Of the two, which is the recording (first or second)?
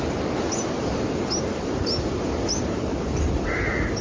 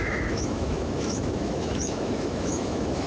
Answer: first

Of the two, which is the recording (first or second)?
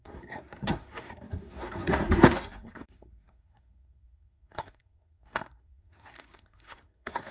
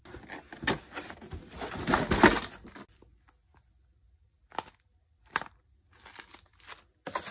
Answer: second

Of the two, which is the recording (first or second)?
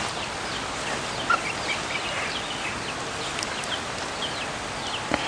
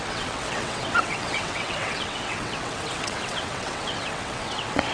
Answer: first